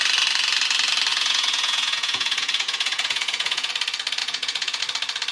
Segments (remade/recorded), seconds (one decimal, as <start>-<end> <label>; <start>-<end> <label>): 0.0-1.1 recorded; 1.1-3.7 remade; 3.7-4.2 recorded; 4.2-4.8 remade; 4.8-5.3 recorded